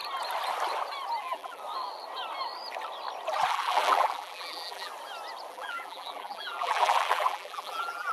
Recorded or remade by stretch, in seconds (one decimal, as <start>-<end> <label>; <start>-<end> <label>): 0.0-1.2 recorded; 1.2-1.6 remade; 1.6-3.5 recorded; 3.5-4.9 remade; 4.9-5.5 recorded; 5.5-8.1 remade